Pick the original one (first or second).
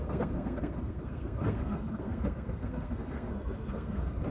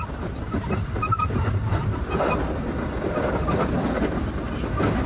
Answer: second